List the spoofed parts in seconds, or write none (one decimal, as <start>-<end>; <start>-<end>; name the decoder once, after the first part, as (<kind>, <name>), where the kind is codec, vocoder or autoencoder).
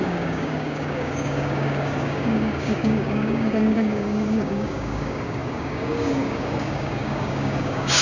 0.0-8.0 (codec, DAC)